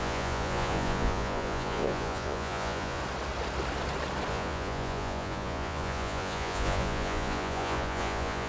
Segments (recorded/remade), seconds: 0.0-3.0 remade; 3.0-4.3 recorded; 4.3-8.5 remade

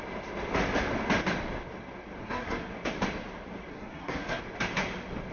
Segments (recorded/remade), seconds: 0.0-2.2 recorded; 2.2-2.7 remade; 2.7-3.7 recorded; 3.7-4.4 remade; 4.4-5.3 recorded

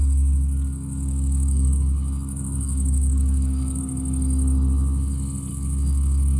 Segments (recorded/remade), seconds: 0.0-3.8 remade; 3.8-5.5 recorded; 5.5-6.4 remade

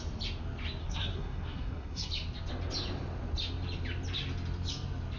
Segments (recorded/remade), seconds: 0.0-0.8 recorded; 0.8-2.1 remade; 2.1-5.2 recorded

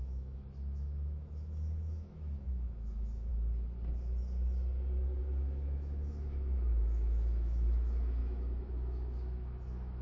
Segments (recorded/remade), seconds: 0.0-3.3 remade; 3.3-5.2 recorded; 5.2-10.0 remade